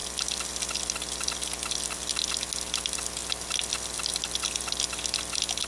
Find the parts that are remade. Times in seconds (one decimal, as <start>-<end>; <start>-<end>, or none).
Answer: none